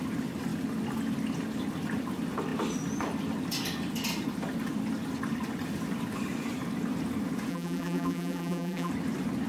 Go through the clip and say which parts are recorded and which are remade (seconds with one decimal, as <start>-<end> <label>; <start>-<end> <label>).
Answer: 0.0-7.5 recorded; 7.5-8.9 remade; 8.9-9.5 recorded